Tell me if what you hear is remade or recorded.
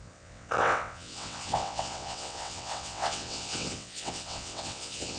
remade